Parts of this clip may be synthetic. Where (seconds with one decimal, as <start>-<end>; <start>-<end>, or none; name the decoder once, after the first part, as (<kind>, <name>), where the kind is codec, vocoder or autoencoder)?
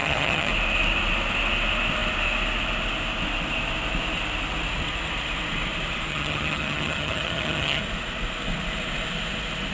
0.0-0.5 (vocoder, HiFi-GAN); 6.1-7.8